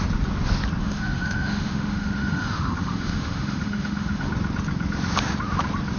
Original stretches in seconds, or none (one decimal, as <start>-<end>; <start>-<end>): 0.0-0.8; 4.3-6.0